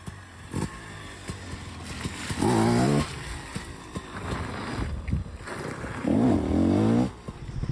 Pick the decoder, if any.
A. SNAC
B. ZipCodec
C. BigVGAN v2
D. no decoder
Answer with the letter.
D